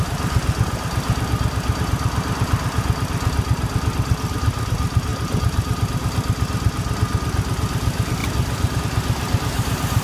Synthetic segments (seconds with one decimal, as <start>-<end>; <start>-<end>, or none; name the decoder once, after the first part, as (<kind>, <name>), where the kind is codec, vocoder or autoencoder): none